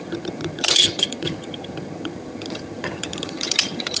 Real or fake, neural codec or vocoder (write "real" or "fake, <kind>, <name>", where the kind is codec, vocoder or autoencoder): fake, vocoder, HiFi-GAN